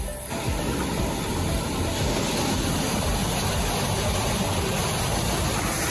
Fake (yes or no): no